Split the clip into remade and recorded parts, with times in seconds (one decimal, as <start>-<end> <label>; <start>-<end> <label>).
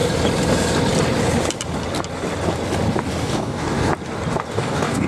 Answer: 0.0-3.1 recorded; 3.1-3.9 remade; 3.9-4.5 recorded; 4.5-5.1 remade